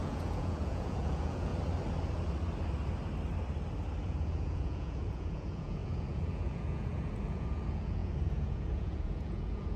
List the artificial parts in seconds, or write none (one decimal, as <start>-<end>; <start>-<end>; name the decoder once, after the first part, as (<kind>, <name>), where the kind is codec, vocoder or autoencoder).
0.0-1.5 (vocoder, Vocos); 4.0-9.8